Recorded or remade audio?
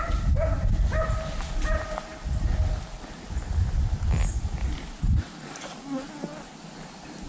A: recorded